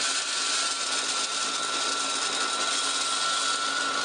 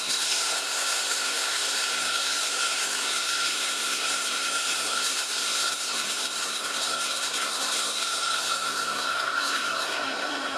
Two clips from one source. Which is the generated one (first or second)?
second